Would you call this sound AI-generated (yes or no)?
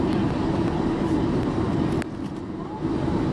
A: no